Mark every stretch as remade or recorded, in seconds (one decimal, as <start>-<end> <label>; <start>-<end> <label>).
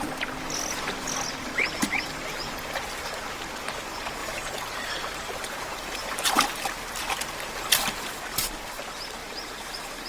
0.0-4.2 recorded; 4.2-6.3 remade; 6.3-9.2 recorded; 9.2-10.1 remade